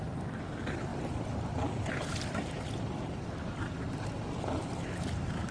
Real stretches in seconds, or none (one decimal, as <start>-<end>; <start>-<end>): 0.0-5.5